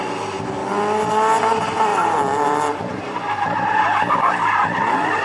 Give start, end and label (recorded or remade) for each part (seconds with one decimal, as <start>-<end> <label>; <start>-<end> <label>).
0.0-1.9 recorded; 1.9-5.2 remade